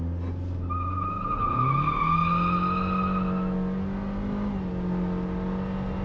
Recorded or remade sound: recorded